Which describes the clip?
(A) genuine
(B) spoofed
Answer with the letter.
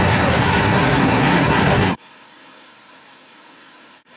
B